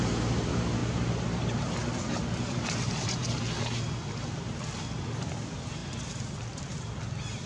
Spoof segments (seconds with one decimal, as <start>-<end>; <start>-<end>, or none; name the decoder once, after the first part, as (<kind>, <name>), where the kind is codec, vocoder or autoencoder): 0.0-0.8 (vocoder, BigVGAN v2); 1.4-3.2; 5.2-7.5